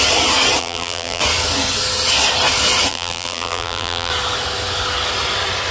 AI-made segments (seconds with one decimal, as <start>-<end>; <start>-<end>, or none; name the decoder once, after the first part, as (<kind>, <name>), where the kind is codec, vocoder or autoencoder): 0.6-1.2 (vocoder, BigVGAN v2); 2.9-4.1